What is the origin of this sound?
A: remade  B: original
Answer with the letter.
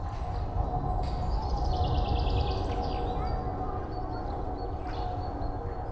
B